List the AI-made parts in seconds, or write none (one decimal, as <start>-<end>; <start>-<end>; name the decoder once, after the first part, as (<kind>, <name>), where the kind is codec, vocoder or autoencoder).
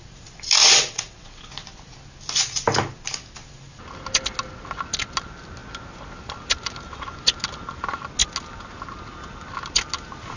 0.6-1.5 (vocoder, WaveNeXt)